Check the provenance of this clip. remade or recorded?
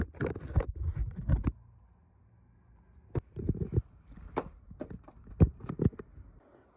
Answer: recorded